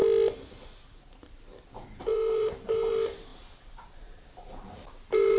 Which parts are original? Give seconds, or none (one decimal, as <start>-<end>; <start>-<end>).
0.0-2.1; 2.9-3.3